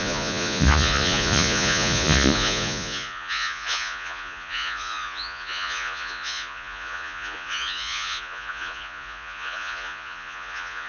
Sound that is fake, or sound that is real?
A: fake